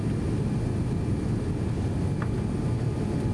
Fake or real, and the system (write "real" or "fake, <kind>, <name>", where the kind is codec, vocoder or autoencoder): real